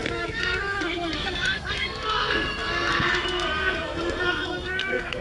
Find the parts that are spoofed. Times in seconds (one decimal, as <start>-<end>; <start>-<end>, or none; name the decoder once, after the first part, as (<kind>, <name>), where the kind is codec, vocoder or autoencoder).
0.0-5.2 (codec, SNAC)

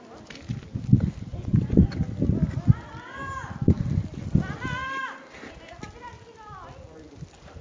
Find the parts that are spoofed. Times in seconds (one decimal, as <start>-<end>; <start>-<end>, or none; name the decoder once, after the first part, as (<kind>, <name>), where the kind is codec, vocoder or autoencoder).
1.3-2.0 (vocoder, WaveNeXt)

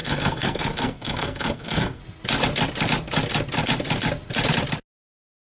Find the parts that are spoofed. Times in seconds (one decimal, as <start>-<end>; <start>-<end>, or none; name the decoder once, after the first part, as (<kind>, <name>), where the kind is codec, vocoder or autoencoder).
0.0-2.0 (codec, SNAC)